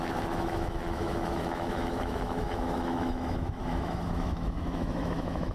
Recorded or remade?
remade